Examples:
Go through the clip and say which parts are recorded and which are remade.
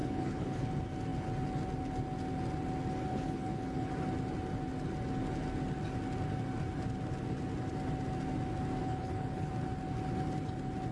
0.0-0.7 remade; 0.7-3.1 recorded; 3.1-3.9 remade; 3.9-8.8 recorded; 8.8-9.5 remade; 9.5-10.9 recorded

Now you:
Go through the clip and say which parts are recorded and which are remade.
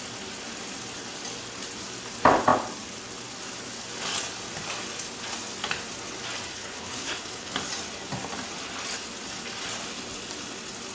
0.0-6.5 recorded; 6.5-7.5 remade; 7.5-10.9 recorded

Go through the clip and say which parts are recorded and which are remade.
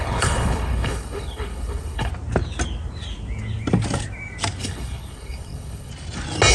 0.0-2.1 remade; 2.1-4.6 recorded; 4.6-5.9 remade; 5.9-6.5 recorded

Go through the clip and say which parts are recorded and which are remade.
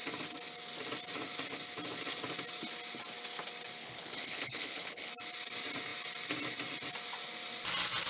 0.0-3.8 recorded; 3.8-5.1 remade; 5.1-8.1 recorded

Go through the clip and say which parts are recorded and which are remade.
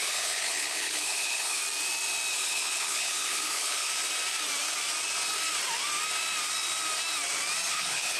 0.0-1.6 remade; 1.6-2.3 recorded; 2.3-3.9 remade; 3.9-7.7 recorded; 7.7-8.2 remade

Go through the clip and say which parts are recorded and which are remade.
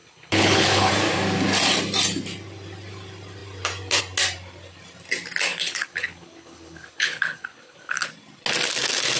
0.0-0.9 remade; 0.9-5.5 recorded; 5.5-8.1 remade; 8.1-9.2 recorded